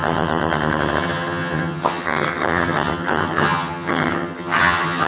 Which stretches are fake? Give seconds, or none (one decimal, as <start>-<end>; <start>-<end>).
0.0-5.1